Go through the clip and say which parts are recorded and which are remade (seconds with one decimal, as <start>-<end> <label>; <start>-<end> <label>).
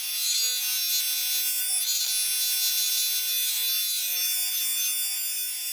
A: 0.0-0.9 remade; 0.9-1.6 recorded; 1.6-2.0 remade; 2.0-3.3 recorded; 3.3-5.7 remade